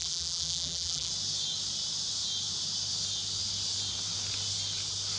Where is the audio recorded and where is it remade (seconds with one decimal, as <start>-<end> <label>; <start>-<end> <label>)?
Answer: 0.0-1.1 remade; 1.1-5.2 recorded